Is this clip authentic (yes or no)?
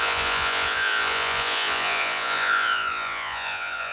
no